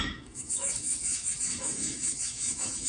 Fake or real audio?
fake